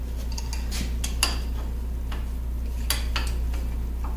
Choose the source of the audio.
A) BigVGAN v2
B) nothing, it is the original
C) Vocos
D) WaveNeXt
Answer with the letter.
B